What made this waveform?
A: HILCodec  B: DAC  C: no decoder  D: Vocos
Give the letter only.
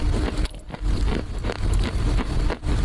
C